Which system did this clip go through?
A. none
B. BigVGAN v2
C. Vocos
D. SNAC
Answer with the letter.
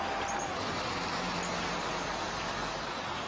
A